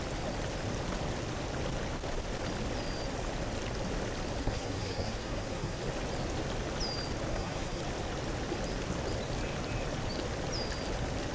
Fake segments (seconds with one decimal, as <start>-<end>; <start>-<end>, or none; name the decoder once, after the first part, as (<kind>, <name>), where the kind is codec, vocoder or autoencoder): 4.4-5.8 (codec, SNAC); 7.3-7.8